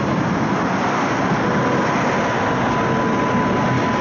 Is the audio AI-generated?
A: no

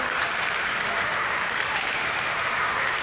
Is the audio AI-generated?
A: yes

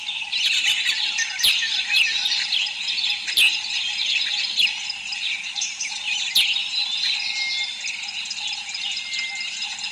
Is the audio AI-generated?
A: no